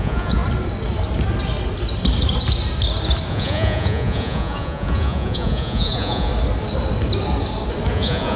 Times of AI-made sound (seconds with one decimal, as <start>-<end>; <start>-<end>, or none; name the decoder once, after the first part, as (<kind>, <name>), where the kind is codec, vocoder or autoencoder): 0.0-0.4 (vocoder, Vocos); 3.3-6.3; 7.9-8.4